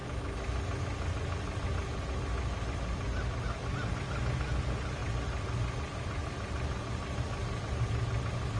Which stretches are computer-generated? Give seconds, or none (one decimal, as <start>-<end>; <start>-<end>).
none